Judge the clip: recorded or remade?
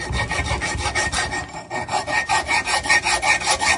recorded